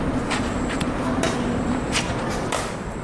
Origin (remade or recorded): remade